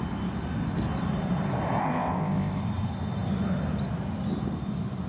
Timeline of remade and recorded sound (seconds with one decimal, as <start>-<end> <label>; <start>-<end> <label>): 0.0-1.8 recorded; 1.8-2.6 remade; 2.6-5.1 recorded